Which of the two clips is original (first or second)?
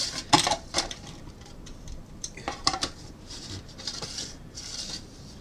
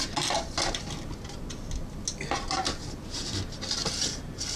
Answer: second